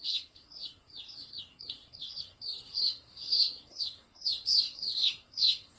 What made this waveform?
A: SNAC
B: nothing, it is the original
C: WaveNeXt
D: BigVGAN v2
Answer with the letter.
A